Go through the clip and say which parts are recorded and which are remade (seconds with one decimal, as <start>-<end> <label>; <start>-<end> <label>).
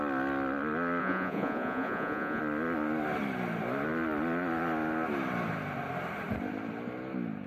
0.0-1.0 recorded; 1.0-2.4 remade; 2.4-7.5 recorded